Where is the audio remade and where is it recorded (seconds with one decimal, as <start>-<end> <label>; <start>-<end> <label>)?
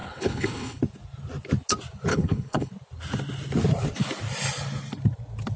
0.0-0.8 remade; 0.8-2.1 recorded; 2.1-2.7 remade; 2.7-5.6 recorded